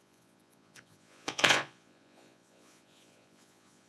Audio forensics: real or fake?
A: fake